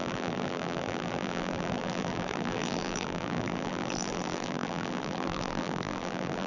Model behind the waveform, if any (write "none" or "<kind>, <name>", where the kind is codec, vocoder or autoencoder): vocoder, BigVGAN v2